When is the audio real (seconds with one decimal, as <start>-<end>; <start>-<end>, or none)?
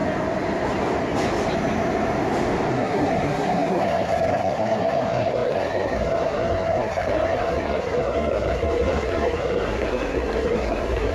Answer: 0.0-2.7